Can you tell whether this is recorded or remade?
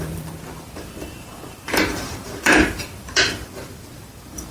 remade